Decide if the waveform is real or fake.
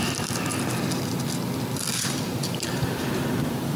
real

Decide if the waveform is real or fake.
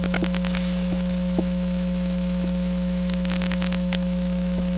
fake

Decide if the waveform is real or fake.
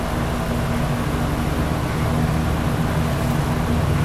real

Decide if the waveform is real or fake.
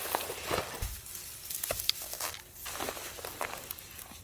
real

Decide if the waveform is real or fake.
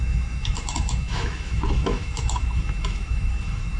fake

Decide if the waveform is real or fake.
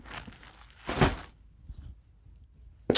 real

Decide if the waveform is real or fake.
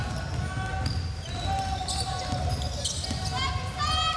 real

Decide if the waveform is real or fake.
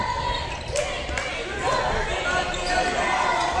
real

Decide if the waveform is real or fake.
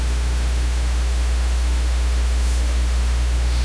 fake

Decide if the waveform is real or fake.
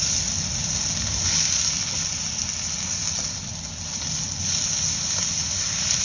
real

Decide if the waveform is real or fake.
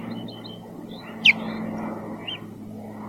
real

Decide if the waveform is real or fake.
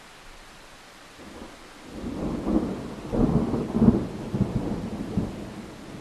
real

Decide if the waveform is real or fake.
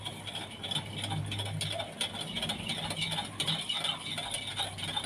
real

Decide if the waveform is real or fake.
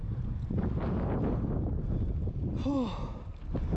real